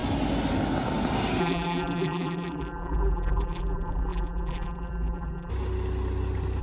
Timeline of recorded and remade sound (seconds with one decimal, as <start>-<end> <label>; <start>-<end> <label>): 0.0-1.4 recorded; 1.4-5.5 remade; 5.5-6.6 recorded